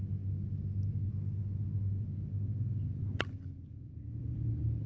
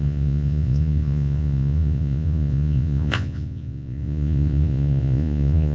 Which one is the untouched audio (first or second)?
first